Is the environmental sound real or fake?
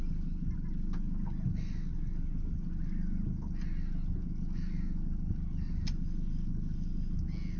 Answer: real